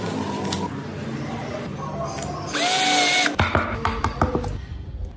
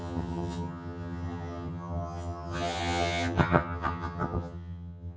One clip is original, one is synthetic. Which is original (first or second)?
first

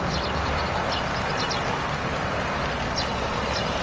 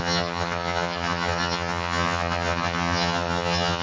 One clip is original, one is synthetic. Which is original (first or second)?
first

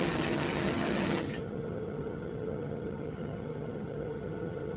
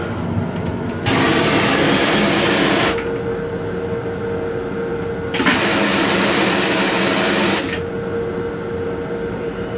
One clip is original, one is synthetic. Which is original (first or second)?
second